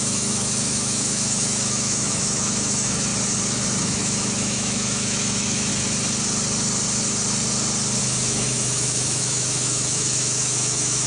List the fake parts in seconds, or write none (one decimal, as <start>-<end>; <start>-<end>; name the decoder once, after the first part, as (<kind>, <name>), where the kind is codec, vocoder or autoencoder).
0.0-3.1 (autoencoder, DAC-VAE); 3.8-5.7; 8.0-11.1